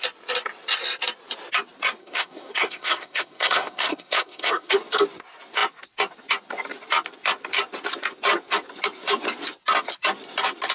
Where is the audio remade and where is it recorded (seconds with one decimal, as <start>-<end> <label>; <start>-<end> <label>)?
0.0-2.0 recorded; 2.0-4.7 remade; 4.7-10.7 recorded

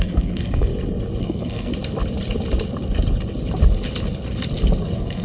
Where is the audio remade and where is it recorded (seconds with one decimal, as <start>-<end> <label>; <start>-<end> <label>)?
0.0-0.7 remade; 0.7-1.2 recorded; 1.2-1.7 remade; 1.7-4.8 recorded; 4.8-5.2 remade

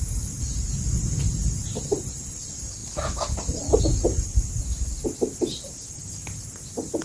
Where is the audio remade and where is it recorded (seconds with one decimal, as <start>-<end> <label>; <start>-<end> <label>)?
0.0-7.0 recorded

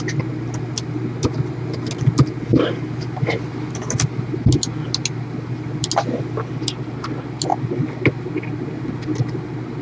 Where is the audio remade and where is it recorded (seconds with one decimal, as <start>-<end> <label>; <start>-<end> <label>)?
0.0-9.8 recorded